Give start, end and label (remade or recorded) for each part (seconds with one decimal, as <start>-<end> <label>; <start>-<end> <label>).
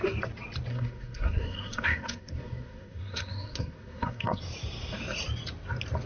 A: 0.0-0.7 recorded; 0.7-4.4 remade; 4.4-6.1 recorded